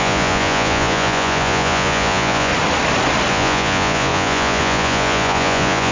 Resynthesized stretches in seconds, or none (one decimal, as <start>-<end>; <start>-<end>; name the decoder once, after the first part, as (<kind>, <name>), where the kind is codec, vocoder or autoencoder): 0.0-2.5 (vocoder, Vocos); 3.3-5.9